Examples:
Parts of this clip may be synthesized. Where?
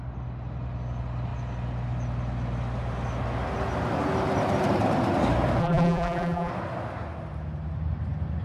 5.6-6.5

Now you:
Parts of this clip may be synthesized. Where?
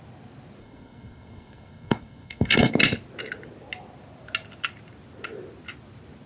0.6-2.7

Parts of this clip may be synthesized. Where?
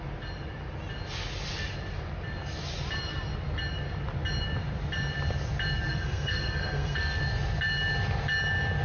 5.9-7.2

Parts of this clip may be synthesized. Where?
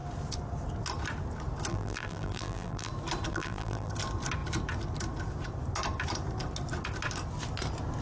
1.7-2.9; 3.3-3.9